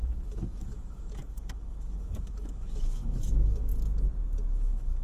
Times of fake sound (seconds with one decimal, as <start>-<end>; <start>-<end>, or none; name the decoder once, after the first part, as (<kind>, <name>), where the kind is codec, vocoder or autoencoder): 0.0-3.7 (autoencoder, DAC-VAE); 4.5-5.0